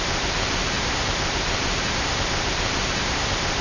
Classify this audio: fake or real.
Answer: fake